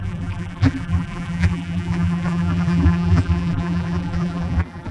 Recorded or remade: remade